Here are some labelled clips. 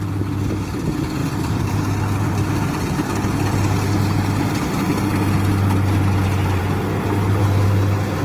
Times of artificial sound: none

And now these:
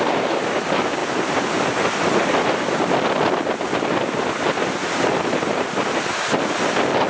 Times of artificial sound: none